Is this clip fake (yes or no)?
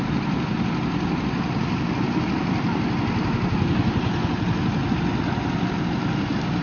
no